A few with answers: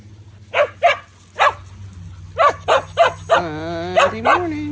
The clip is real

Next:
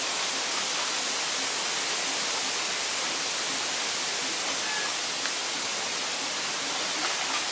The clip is real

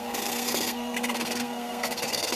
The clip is fake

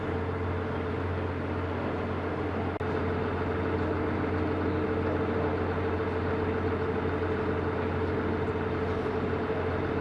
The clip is real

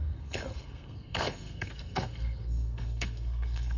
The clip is fake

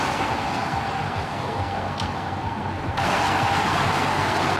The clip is fake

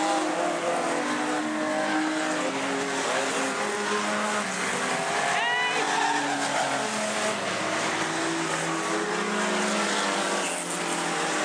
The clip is real